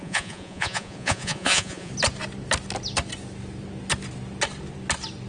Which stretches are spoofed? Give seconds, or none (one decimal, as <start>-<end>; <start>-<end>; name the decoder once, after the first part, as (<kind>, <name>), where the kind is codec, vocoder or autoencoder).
0.0-1.9 (vocoder, Vocos)